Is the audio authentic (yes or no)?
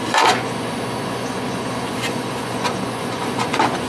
no